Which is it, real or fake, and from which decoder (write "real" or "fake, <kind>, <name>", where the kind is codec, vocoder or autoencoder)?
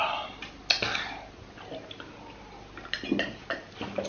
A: real